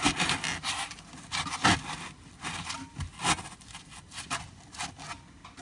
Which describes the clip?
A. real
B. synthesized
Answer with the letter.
A